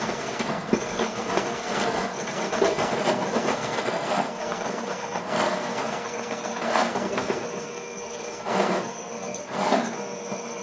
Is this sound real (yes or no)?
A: no